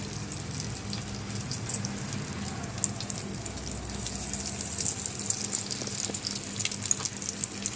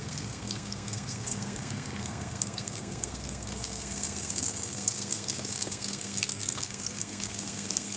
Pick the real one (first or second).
first